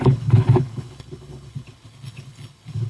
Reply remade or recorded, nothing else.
remade